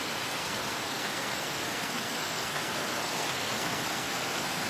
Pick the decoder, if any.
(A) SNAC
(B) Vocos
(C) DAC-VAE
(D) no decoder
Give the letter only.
A